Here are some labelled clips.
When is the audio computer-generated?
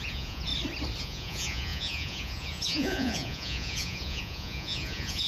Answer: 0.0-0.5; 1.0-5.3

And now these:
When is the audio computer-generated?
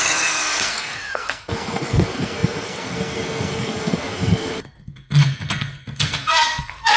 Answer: 0.0-7.0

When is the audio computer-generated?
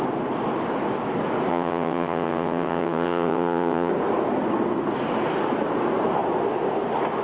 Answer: 1.5-3.9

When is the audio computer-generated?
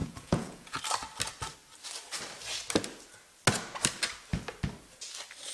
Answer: 0.0-0.8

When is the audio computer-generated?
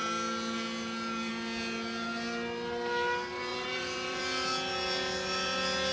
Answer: 3.5-4.2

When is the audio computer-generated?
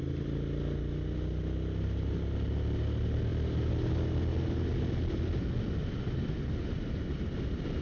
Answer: none